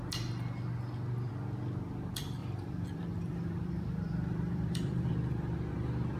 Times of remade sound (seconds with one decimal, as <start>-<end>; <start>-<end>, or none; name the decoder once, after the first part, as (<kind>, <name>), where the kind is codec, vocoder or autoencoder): 2.4-5.1 (vocoder, BigVGAN v2)